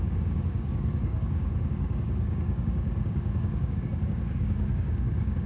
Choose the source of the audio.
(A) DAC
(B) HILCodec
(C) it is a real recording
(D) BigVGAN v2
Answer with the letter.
A